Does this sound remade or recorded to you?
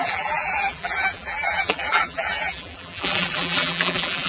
remade